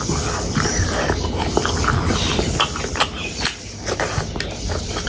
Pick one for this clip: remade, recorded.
recorded